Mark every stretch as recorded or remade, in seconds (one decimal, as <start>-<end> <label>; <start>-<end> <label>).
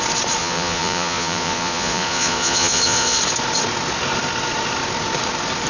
0.0-0.4 recorded; 0.4-3.2 remade; 3.2-5.7 recorded